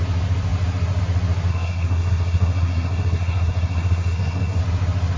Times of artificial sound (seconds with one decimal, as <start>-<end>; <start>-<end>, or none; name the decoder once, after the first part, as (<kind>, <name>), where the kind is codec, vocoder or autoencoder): 1.5-4.6 (codec, SNAC)